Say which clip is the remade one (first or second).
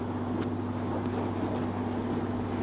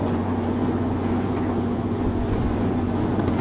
second